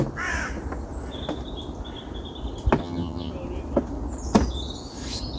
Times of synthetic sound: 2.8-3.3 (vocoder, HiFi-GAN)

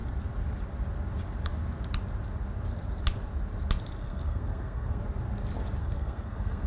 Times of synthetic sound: 4.0-5.0 (codec, SNAC); 5.8-6.7

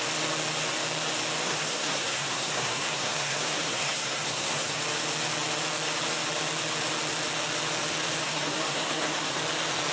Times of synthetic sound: 1.4-4.8 (codec, SNAC); 8.2-9.4

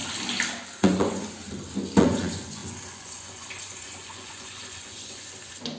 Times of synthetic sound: 0.8-1.4 (vocoder, Vocos); 2.0-5.8